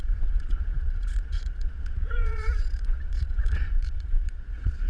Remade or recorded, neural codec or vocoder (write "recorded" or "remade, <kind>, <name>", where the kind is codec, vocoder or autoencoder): remade, vocoder, Vocos